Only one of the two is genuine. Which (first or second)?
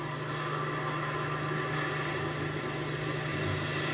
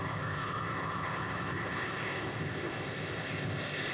first